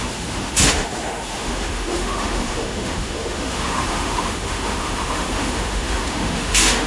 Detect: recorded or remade remade